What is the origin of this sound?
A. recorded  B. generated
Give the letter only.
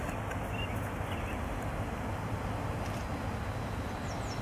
A